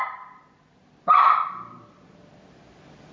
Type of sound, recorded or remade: remade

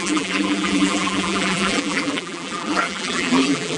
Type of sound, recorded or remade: remade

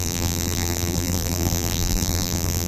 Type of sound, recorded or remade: remade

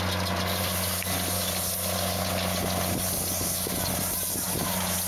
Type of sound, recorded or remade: recorded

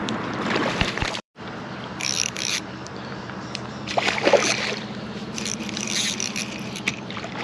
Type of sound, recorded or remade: remade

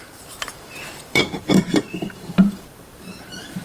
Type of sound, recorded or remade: remade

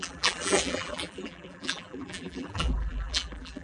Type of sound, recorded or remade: remade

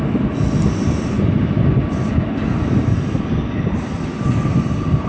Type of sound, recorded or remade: recorded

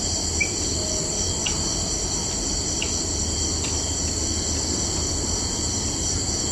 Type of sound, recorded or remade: recorded